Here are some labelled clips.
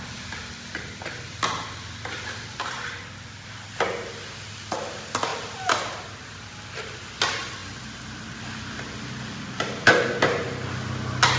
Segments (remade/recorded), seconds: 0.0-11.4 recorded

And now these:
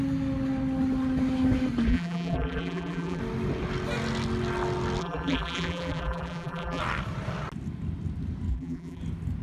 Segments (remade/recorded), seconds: 0.0-1.9 recorded; 1.9-3.2 remade; 3.2-5.0 recorded; 5.0-6.8 remade; 6.8-8.5 recorded; 8.5-9.0 remade; 9.0-9.4 recorded

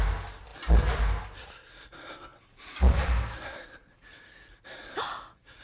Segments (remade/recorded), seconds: 0.0-5.6 recorded

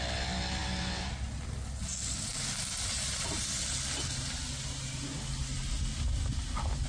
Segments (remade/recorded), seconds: 0.0-6.9 recorded

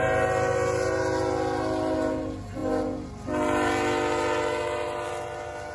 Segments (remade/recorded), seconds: 0.0-5.7 recorded

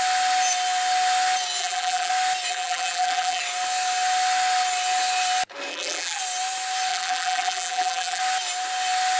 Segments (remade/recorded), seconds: 0.0-1.6 recorded; 1.6-2.1 remade; 2.1-2.5 recorded; 2.5-3.4 remade; 3.4-5.7 recorded; 5.7-6.2 remade; 6.2-6.9 recorded; 6.9-8.2 remade; 8.2-9.2 recorded